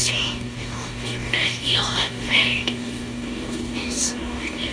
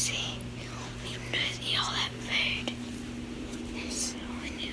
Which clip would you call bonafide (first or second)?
second